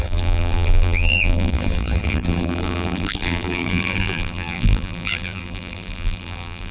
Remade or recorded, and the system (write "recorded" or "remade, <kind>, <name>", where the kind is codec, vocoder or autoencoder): remade, vocoder, BigVGAN v2